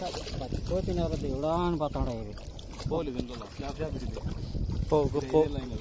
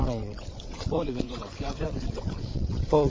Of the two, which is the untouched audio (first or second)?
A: first